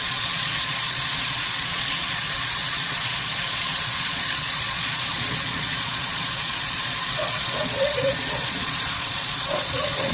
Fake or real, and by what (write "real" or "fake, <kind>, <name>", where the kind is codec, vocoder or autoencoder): fake, vocoder, Vocos